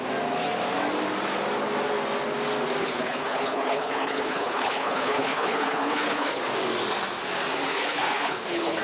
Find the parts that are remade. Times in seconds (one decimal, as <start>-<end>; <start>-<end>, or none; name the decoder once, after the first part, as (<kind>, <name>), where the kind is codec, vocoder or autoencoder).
2.8-6.4 (codec, HILCodec); 7.7-8.8